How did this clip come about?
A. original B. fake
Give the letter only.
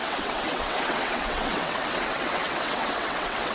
B